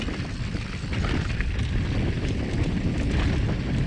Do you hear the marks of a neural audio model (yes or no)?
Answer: no